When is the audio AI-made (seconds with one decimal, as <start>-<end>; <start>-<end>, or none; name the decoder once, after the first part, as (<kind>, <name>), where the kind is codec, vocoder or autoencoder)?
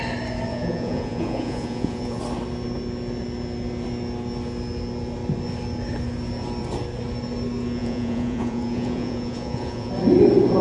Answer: 0.5-2.2 (vocoder, Vocos); 7.8-9.9